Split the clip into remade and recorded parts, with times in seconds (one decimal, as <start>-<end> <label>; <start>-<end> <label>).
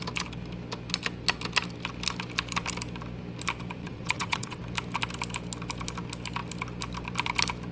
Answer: 0.0-3.8 recorded; 3.8-4.6 remade; 4.6-7.7 recorded